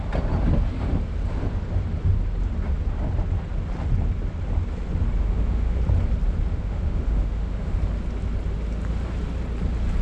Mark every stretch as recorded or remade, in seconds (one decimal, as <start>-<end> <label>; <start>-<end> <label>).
0.0-5.2 recorded; 5.2-5.8 remade; 5.8-6.5 recorded; 6.5-7.8 remade; 7.8-10.0 recorded